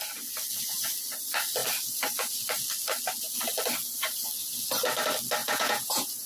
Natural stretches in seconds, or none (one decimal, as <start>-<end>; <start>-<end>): 0.0-5.4